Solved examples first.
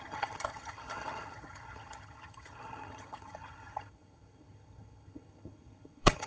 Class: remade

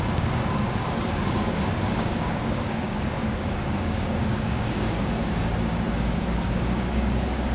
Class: remade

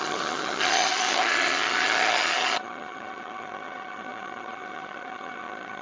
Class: remade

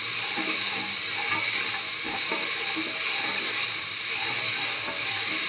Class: recorded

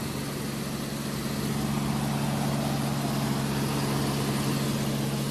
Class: recorded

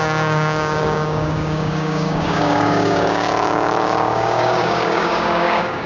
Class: remade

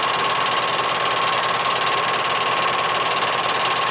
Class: recorded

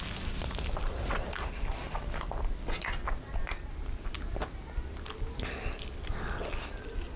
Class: recorded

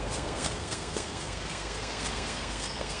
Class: remade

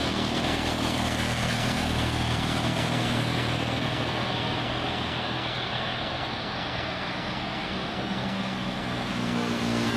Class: remade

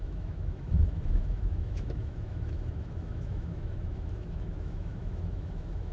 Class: remade